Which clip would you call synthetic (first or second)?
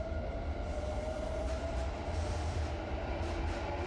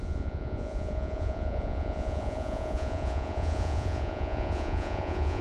second